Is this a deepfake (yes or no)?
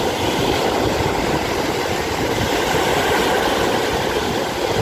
no